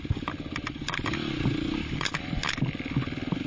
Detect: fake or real real